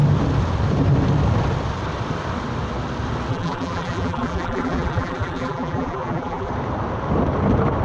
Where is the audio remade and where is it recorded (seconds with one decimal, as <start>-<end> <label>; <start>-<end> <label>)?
0.0-3.3 recorded; 3.3-6.5 remade; 6.5-7.8 recorded